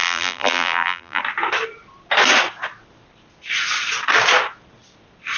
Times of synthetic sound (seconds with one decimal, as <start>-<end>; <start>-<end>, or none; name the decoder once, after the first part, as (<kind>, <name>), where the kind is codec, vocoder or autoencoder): 0.0-1.2 (vocoder, BigVGAN v2)